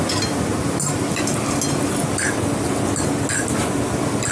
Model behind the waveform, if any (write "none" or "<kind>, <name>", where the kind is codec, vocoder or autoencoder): none